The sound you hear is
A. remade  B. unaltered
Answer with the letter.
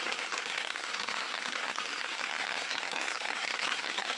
A